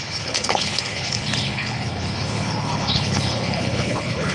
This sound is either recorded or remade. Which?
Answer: remade